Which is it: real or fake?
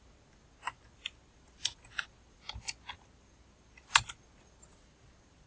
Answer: real